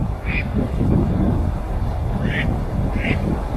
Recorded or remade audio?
remade